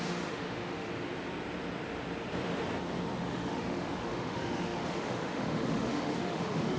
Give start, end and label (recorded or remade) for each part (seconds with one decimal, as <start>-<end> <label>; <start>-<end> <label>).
0.0-0.9 remade; 0.9-3.2 recorded; 3.2-6.8 remade